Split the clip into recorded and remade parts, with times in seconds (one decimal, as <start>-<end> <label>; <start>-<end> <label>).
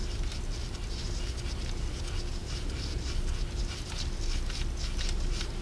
0.0-5.6 recorded